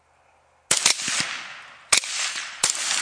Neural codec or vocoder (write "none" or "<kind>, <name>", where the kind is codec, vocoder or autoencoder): none